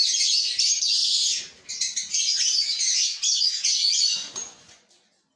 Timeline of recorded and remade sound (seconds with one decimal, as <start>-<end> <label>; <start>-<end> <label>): 0.0-4.2 recorded; 4.2-5.0 remade; 5.0-5.4 recorded